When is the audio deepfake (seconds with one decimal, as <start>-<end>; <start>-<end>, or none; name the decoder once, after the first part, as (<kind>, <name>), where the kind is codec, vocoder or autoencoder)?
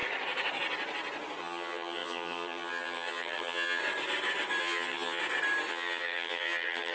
1.4-3.8 (vocoder, HiFi-GAN); 4.6-5.2; 5.7-6.9